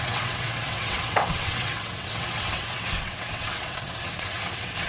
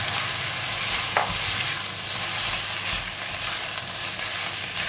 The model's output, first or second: first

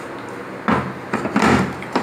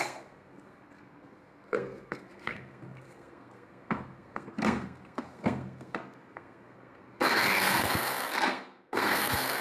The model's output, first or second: second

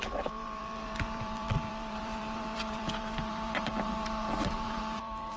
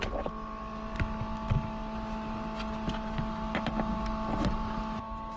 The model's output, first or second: first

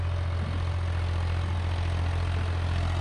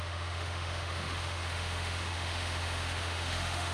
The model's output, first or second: second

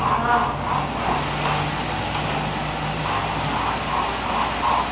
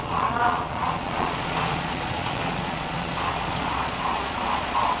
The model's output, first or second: second